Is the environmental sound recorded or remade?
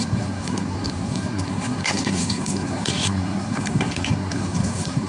remade